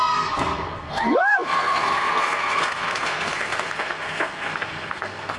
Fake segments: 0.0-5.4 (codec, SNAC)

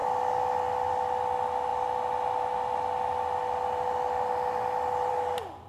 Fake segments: none

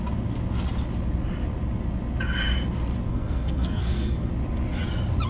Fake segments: 3.1-4.3 (codec, SNAC)

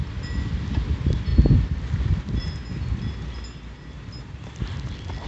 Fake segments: none

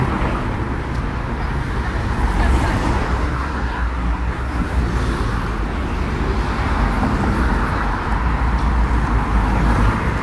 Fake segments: 3.2-4.8 (codec, SNAC)

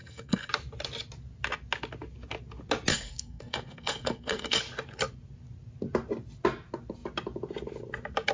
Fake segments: 0.0-0.5 (codec, SNAC); 2.9-4.6